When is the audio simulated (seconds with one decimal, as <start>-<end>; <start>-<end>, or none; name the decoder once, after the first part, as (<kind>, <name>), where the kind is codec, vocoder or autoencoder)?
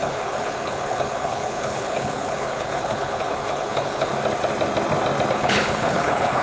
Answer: 0.0-4.1 (codec, HILCodec); 5.3-6.4